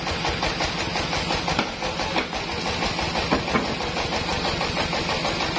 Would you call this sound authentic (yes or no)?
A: yes